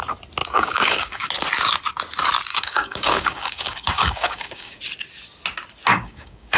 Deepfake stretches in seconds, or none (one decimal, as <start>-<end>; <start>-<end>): 0.4-1.3; 2.5-4.8; 5.9-6.6